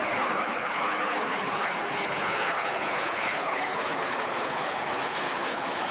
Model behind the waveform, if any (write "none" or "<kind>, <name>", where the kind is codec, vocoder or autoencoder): codec, HILCodec